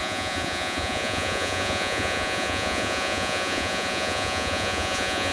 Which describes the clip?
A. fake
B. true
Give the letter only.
A